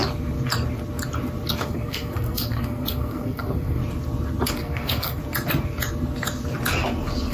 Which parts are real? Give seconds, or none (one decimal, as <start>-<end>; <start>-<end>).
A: 0.0-1.5; 3.8-4.5; 5.2-7.3